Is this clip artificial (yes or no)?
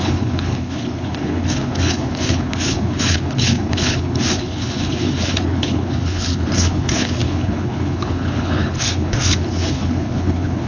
yes